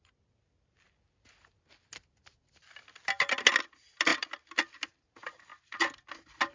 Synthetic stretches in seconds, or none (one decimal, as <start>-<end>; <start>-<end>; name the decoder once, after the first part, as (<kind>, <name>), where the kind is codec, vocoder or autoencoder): none